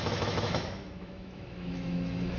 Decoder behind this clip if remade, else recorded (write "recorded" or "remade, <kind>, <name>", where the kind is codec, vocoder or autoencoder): remade, autoencoder, DAC-VAE